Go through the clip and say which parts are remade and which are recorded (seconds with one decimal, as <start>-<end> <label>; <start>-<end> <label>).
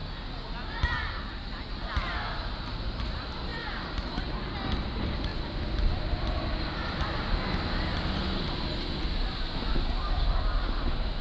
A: 0.0-11.2 recorded